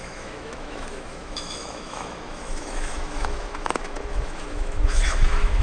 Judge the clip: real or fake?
fake